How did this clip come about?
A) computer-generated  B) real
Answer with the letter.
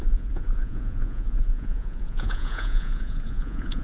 A